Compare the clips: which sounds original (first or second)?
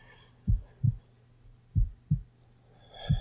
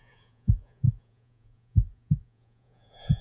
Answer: first